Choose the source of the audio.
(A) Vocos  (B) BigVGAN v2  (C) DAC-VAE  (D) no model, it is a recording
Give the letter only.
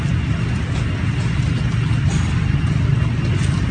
D